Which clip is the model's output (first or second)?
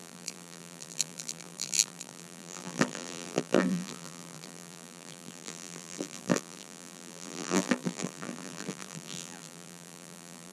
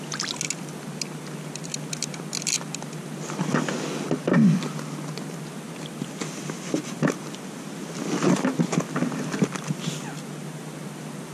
first